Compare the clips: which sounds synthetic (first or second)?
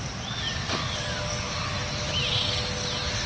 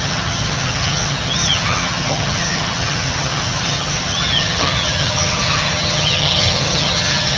second